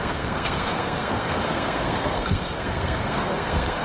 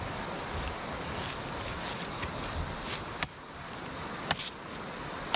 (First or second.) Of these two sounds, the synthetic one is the first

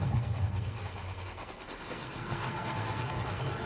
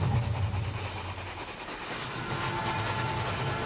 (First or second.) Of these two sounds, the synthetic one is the first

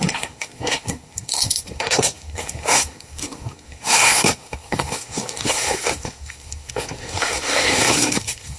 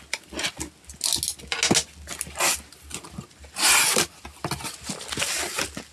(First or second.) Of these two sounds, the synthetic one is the first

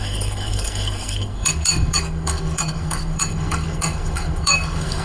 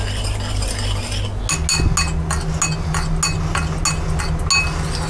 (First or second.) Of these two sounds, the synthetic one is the first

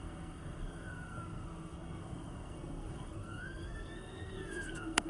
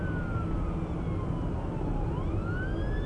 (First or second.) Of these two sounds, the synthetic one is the first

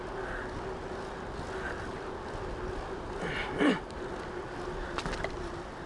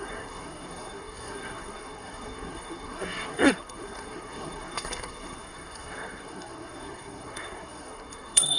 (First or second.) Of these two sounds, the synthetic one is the second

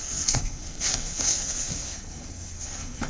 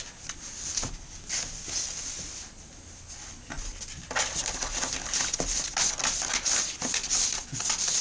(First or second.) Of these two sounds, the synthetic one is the first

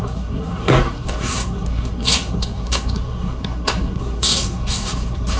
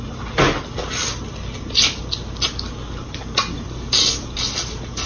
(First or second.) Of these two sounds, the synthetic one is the first